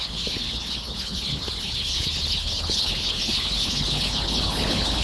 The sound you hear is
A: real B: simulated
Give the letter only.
B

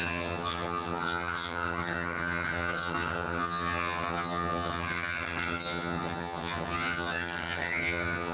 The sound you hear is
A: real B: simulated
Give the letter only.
B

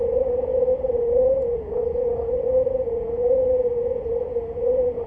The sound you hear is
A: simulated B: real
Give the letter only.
A